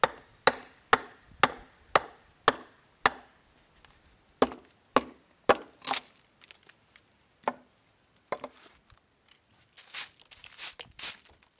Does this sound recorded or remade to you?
recorded